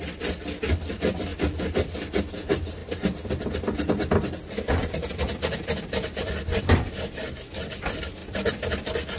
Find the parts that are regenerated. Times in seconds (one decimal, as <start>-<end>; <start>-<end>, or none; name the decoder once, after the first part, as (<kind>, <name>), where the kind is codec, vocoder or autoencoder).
0.0-2.8 (vocoder, BigVGAN v2); 6.6-9.2